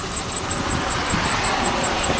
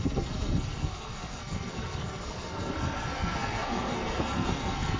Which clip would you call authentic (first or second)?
first